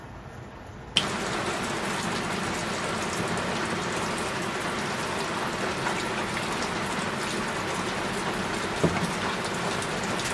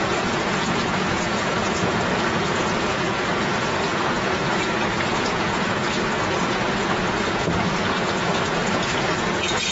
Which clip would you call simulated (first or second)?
second